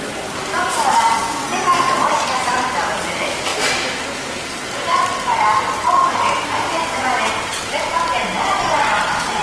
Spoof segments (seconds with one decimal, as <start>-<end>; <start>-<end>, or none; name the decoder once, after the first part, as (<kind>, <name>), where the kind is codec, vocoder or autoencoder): none